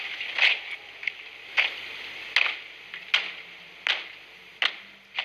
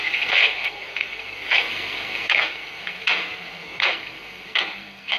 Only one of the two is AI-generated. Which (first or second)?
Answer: second